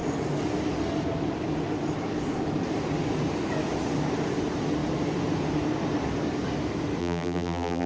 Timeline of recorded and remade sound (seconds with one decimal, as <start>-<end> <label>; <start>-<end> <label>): 0.0-7.0 recorded; 7.0-7.9 remade